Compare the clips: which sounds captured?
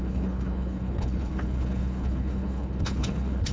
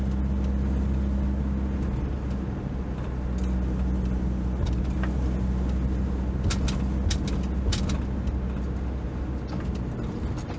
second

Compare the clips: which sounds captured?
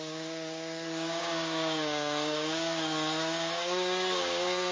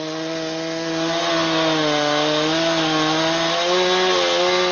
second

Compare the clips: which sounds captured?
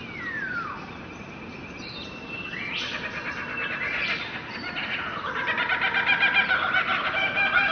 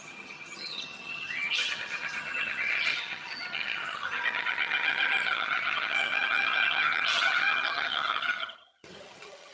first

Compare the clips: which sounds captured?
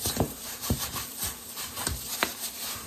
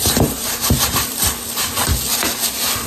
second